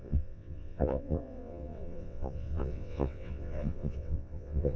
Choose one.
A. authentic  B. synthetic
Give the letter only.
B